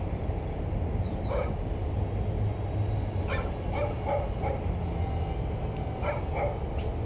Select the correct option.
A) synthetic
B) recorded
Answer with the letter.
B